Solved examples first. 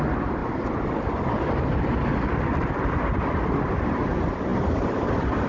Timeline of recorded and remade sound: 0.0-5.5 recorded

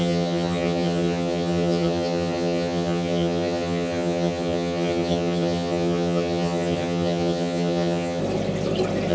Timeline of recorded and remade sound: 0.0-8.2 remade; 8.2-9.1 recorded

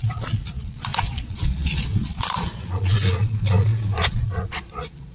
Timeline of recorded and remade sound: 0.0-5.1 remade

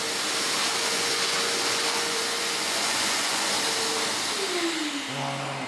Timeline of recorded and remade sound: 0.0-0.8 recorded; 0.8-3.5 remade; 3.5-5.7 recorded

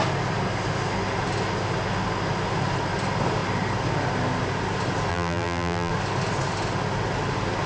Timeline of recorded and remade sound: 0.0-5.1 recorded; 5.1-5.9 remade; 5.9-7.7 recorded

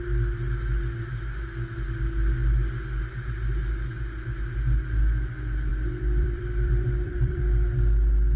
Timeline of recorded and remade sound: 0.0-5.7 recorded; 5.7-7.4 remade; 7.4-8.4 recorded

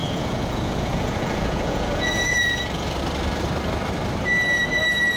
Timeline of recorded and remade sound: 0.0-3.0 remade; 3.0-5.2 recorded